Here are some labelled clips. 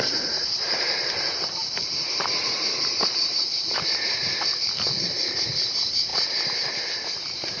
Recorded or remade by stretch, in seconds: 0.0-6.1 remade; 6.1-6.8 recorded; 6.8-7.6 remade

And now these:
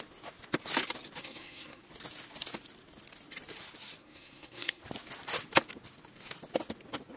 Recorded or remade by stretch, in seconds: 0.0-1.2 recorded; 1.2-1.8 remade; 1.8-4.0 recorded; 4.0-4.8 remade; 4.8-7.2 recorded

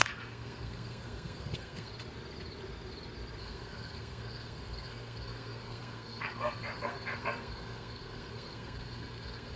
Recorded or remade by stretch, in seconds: 0.0-1.9 remade; 1.9-3.4 recorded; 3.4-9.6 remade

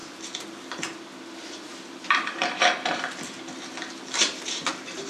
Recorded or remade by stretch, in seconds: 0.0-1.7 recorded; 1.7-2.6 remade; 2.6-5.1 recorded

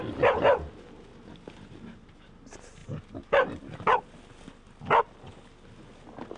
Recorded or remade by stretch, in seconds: 0.0-6.4 recorded

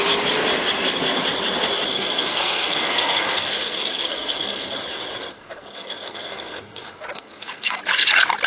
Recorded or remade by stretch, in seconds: 0.0-1.9 recorded; 1.9-4.8 remade; 4.8-5.3 recorded; 5.3-7.8 remade; 7.8-8.5 recorded

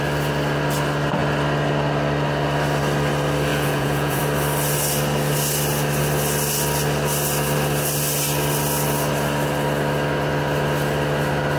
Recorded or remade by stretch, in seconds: 0.0-3.5 recorded; 3.5-4.2 remade; 4.2-11.6 recorded